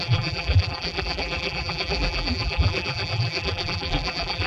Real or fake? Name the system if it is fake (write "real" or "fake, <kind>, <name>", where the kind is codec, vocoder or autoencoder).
fake, vocoder, BigVGAN v2